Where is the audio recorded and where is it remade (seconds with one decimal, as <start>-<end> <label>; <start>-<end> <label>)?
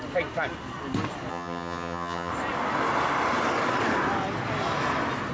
0.0-1.3 recorded; 1.3-2.3 remade; 2.3-5.3 recorded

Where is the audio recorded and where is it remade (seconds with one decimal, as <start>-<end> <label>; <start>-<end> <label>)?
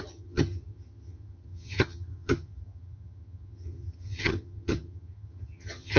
0.0-6.0 remade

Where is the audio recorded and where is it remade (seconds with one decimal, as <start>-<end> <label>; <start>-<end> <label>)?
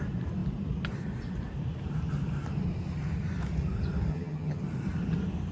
0.0-4.1 recorded; 4.1-4.6 remade; 4.6-5.5 recorded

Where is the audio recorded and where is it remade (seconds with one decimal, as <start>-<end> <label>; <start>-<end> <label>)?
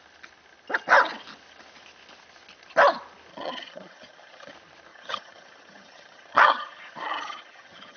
0.0-3.3 recorded; 3.3-4.5 remade; 4.5-4.9 recorded; 4.9-8.0 remade